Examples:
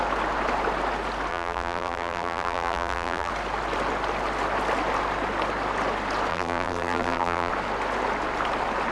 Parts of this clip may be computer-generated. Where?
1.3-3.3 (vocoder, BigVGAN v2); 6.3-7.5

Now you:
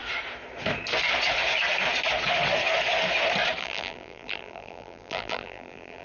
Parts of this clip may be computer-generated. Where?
3.6-6.0 (vocoder, BigVGAN v2)

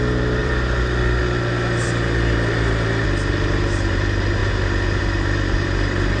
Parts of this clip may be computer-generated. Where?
0.4-1.2 (vocoder, BigVGAN v2)

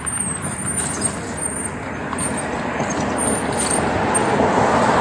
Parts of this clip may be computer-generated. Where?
4.2-5.0 (vocoder, BigVGAN v2)

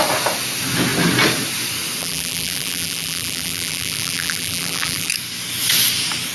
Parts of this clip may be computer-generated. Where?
2.0-5.1 (vocoder, BigVGAN v2)

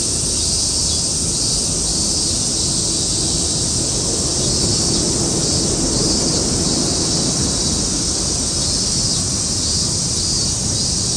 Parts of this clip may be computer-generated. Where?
none